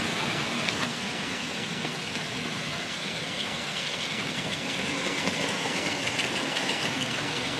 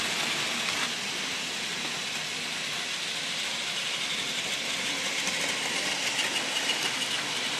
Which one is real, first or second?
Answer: second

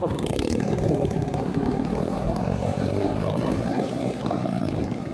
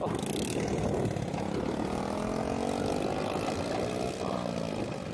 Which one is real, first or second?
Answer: second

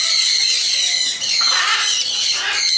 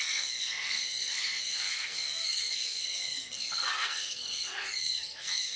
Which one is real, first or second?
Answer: first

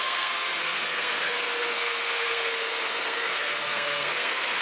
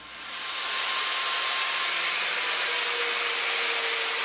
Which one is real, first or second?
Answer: second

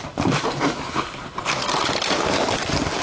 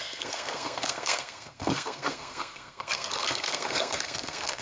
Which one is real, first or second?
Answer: first